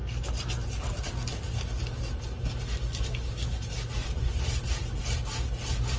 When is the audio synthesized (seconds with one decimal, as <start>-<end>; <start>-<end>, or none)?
4.0-5.0